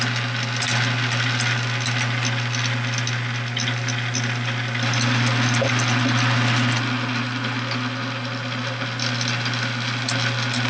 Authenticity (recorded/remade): recorded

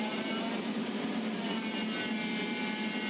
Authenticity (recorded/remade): recorded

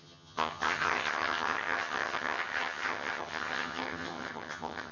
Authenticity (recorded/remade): remade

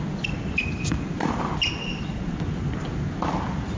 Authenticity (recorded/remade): recorded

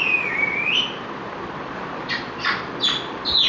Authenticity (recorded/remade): recorded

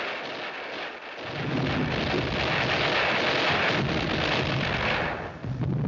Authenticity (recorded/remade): recorded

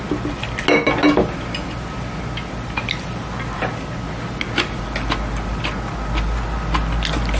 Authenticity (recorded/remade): recorded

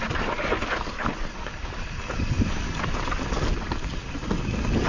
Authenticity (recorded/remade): recorded